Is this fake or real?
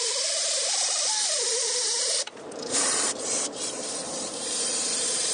fake